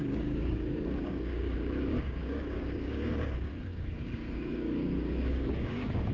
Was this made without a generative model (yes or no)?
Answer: no